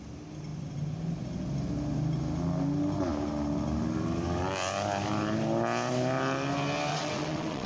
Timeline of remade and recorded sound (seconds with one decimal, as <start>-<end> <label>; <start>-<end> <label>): 0.0-6.9 recorded; 6.9-7.7 remade